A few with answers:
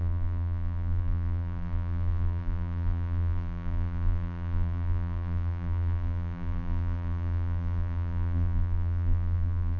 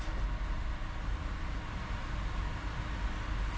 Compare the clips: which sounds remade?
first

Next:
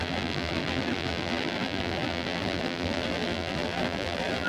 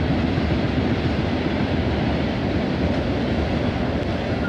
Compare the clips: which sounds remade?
first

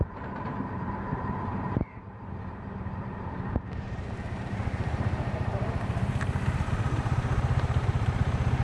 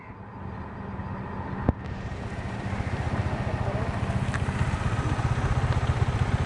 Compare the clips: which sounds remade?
first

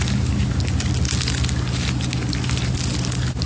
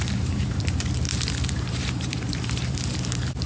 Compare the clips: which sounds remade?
second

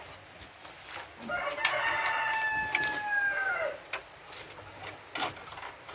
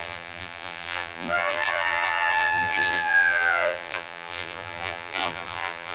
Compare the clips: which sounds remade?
second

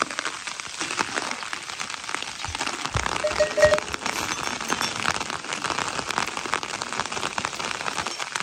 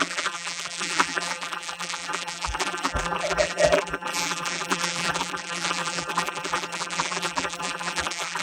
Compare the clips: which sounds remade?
second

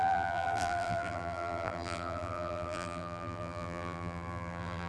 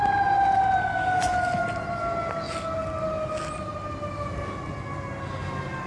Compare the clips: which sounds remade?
first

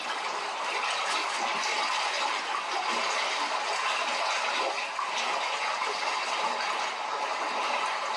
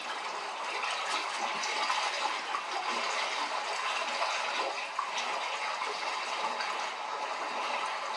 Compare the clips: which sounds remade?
first